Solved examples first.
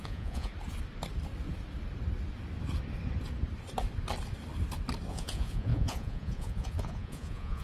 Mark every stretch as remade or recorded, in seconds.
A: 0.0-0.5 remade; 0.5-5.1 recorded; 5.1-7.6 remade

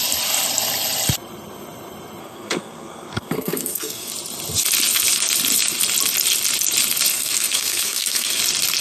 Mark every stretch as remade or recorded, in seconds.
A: 0.0-2.2 recorded; 2.2-4.1 remade; 4.1-7.1 recorded; 7.1-8.4 remade; 8.4-8.8 recorded

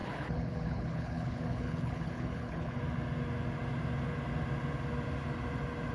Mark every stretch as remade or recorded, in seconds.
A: 0.0-2.8 remade; 2.8-5.9 recorded

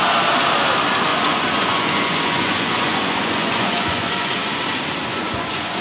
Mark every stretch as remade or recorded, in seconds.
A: 0.0-1.1 recorded; 1.1-4.6 remade; 4.6-5.1 recorded; 5.1-5.8 remade

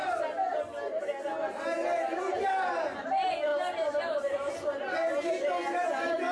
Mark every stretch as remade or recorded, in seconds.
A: 0.0-3.5 recorded; 3.5-4.5 remade; 4.5-6.3 recorded

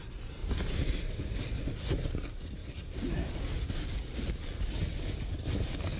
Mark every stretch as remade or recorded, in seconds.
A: 0.0-0.4 recorded; 0.4-1.1 remade; 1.1-2.6 recorded; 2.6-4.3 remade; 4.3-4.8 recorded; 4.8-6.0 remade

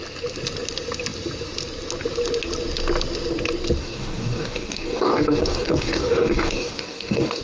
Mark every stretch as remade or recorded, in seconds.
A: 0.0-3.8 recorded; 3.8-7.4 remade

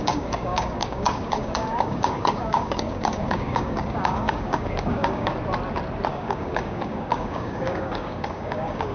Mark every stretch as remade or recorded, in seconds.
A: 0.0-5.3 remade; 5.3-6.1 recorded; 6.1-8.9 remade